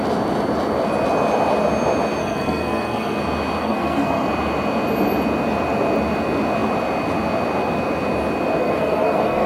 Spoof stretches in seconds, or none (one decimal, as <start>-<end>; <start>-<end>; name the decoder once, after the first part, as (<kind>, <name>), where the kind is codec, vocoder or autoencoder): 2.2-3.2 (codec, SNAC); 3.6-4.3; 8.6-9.5